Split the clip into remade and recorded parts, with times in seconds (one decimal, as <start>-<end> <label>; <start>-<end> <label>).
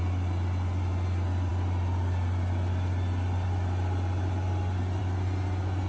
0.0-5.9 recorded